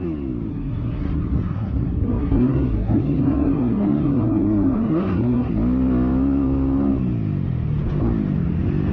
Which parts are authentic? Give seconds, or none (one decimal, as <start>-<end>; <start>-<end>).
0.0-0.5; 5.5-8.9